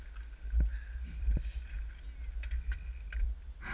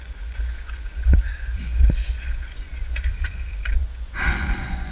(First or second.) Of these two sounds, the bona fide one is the first